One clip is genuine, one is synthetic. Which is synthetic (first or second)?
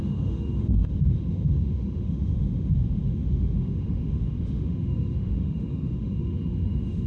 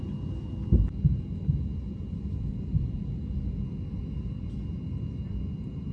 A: first